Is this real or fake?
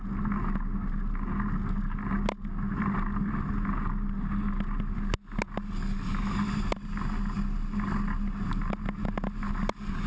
real